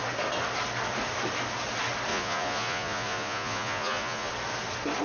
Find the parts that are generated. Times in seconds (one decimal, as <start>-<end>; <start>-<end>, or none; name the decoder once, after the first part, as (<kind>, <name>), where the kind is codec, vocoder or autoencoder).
2.1-4.3 (vocoder, Vocos)